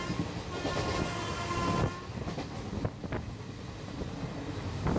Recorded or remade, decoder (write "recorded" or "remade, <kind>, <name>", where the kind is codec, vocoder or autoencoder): recorded